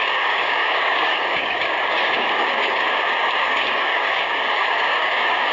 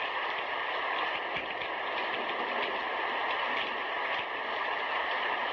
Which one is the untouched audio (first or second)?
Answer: second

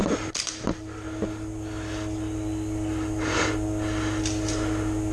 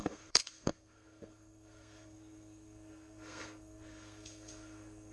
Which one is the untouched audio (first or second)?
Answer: first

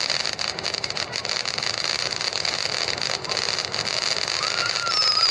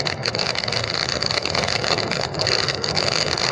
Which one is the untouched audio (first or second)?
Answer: first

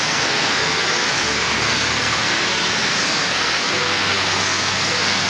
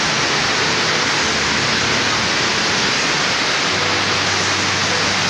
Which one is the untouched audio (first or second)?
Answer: second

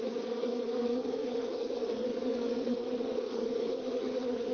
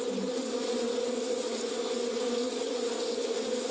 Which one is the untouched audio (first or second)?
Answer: second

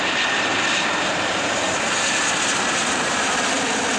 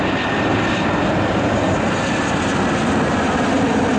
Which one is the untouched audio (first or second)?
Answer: second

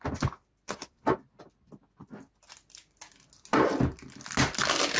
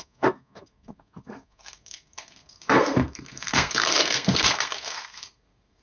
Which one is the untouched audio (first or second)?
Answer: first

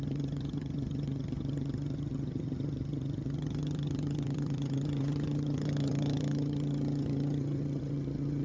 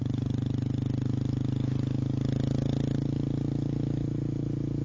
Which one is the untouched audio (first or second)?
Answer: second